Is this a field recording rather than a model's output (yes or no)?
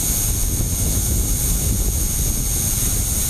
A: yes